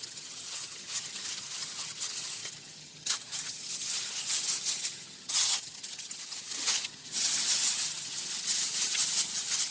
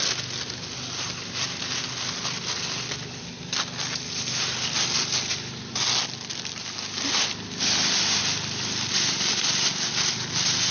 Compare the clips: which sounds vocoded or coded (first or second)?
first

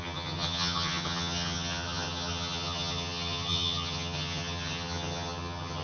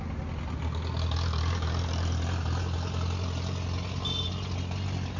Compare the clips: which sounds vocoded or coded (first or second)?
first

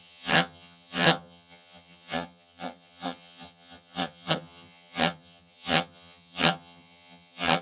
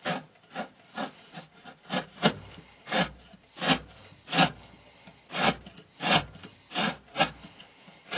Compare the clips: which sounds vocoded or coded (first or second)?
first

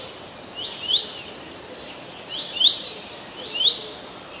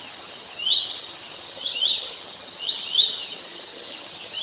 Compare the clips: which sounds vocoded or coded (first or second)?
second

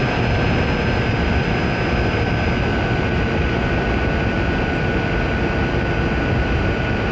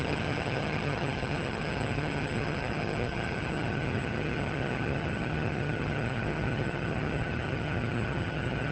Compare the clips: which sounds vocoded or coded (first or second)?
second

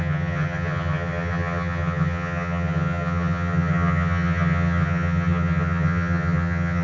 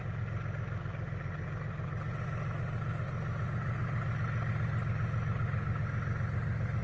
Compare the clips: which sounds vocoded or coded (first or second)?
first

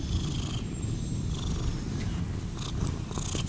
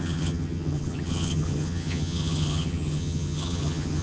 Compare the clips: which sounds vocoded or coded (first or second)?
second